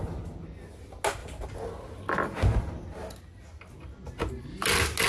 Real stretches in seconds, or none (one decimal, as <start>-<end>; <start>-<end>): 0.0-5.1